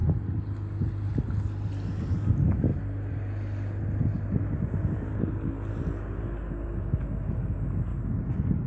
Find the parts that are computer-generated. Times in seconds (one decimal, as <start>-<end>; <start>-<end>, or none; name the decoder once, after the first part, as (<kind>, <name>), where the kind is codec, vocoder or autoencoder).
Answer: 7.9-8.7 (vocoder, BigVGAN v2)